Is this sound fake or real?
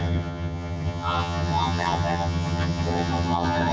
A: fake